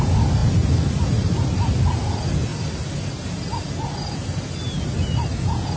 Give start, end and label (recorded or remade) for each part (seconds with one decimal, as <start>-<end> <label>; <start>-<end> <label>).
0.0-5.8 recorded